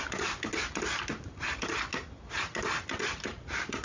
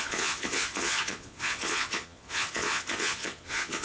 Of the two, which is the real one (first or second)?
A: first